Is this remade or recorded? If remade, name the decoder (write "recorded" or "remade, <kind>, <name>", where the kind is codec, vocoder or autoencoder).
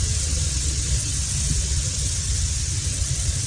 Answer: remade, vocoder, WaveNeXt